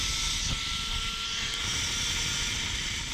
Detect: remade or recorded recorded